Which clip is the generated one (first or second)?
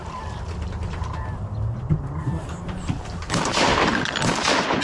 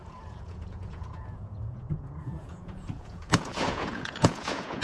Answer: second